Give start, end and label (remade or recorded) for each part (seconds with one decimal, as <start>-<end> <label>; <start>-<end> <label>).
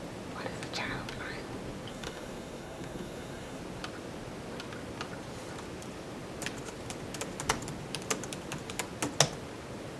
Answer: 0.0-1.9 recorded; 1.9-3.6 remade; 3.6-10.0 recorded